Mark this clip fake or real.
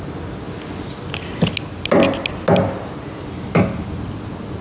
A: real